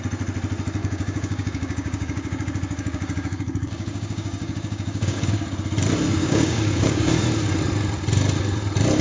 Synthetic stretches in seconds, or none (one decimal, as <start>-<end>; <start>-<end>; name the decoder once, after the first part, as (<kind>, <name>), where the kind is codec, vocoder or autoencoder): 0.8-5.4 (codec, DAC); 6.2-7.1